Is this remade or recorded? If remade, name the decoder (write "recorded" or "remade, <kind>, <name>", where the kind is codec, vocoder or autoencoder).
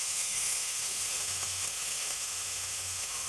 remade, autoencoder, DAC-VAE